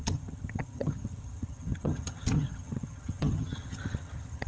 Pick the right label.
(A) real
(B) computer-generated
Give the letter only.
B